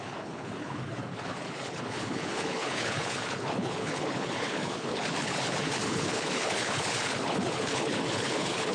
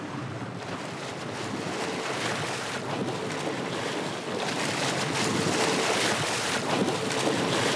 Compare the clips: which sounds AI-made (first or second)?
first